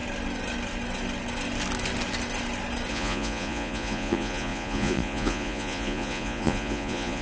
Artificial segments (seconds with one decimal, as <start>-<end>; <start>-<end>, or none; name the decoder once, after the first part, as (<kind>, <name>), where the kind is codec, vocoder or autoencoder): 2.9-7.2 (vocoder, Vocos)